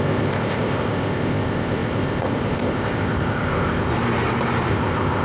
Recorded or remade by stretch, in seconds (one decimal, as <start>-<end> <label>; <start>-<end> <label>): 0.0-3.9 remade; 3.9-4.7 recorded; 4.7-5.2 remade